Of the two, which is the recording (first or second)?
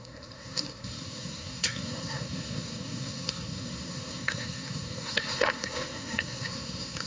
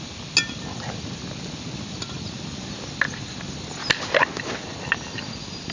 second